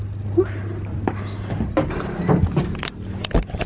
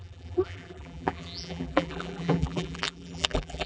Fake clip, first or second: second